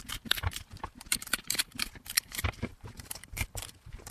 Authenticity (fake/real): fake